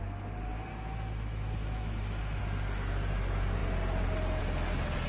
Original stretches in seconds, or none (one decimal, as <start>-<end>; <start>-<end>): 0.0-0.7; 2.4-5.1